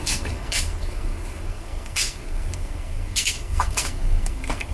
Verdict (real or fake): fake